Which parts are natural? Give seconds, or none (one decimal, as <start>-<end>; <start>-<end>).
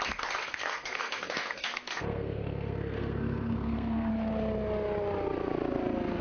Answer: 0.0-0.4; 4.1-6.2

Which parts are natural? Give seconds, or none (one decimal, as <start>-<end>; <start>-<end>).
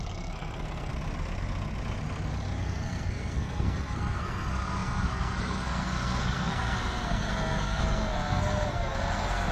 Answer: 0.9-2.6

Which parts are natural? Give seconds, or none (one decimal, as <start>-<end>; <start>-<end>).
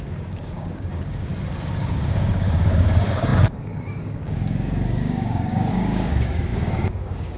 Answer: 1.3-1.8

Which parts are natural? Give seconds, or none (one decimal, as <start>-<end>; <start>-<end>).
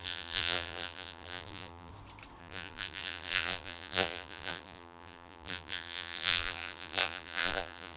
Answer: 1.9-2.4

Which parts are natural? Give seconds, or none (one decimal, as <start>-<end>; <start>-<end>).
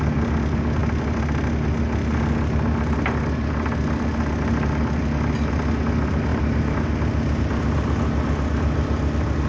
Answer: 0.0-6.3; 6.9-9.5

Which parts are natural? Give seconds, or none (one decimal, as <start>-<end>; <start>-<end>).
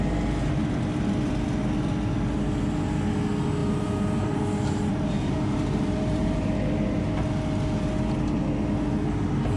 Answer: 0.0-3.6; 6.5-9.6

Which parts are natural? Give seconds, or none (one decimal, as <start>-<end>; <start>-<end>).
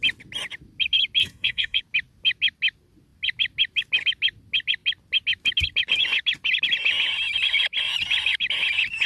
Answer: 0.0-1.2; 1.8-9.1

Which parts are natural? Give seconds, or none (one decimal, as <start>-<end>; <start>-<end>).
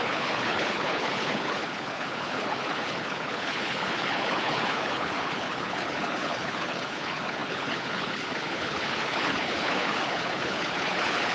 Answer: none